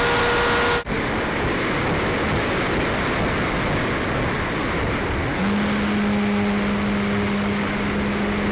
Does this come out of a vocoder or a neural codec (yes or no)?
no